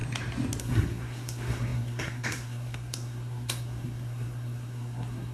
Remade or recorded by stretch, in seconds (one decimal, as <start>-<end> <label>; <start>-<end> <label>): 0.0-0.6 recorded; 0.6-5.3 remade